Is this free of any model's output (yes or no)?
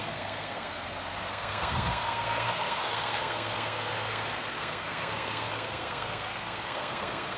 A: no